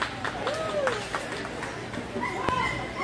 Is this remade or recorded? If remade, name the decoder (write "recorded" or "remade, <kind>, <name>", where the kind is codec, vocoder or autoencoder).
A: recorded